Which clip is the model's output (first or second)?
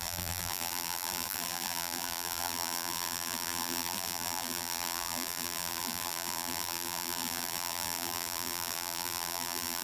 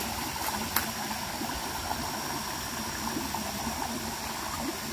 first